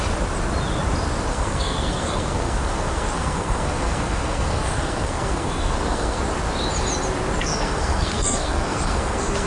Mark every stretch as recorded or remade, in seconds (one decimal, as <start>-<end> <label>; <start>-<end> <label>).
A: 0.0-1.3 recorded; 1.3-6.2 remade; 6.2-7.4 recorded; 7.4-9.5 remade